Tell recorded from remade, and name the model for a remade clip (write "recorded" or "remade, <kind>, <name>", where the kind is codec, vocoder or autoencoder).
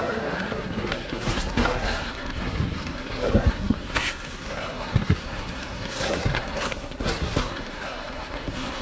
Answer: remade, codec, SNAC